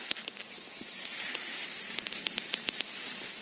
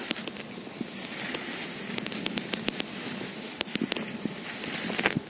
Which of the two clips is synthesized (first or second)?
first